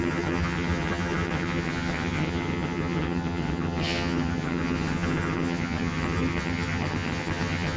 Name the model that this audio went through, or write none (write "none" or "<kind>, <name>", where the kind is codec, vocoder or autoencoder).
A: vocoder, HiFi-GAN